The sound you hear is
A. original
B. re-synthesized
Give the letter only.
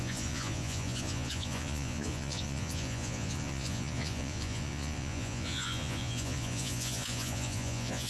B